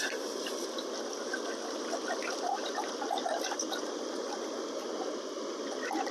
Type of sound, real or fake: real